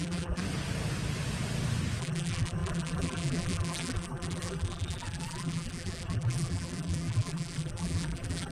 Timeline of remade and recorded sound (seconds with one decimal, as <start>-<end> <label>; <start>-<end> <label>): 0.0-0.4 remade; 0.4-2.0 recorded; 2.0-8.5 remade